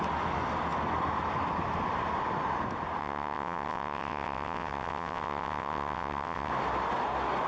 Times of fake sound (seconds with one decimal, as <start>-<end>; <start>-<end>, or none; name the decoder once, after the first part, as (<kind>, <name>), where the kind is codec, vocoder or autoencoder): 3.0-6.5 (vocoder, WaveNeXt)